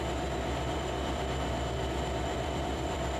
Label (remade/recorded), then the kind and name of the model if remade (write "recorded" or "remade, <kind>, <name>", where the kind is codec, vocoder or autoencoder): remade, vocoder, BigVGAN v2